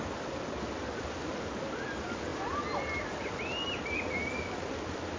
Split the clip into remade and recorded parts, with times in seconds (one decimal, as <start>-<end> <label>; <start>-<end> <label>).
0.0-5.2 recorded